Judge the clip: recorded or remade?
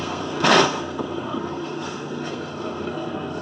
remade